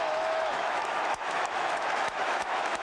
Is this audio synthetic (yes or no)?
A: yes